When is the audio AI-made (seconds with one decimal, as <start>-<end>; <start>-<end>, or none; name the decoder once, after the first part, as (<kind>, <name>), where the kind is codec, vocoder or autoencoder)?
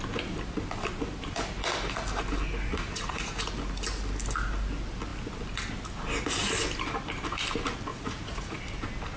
2.7-3.4 (vocoder, Vocos); 7.9-8.6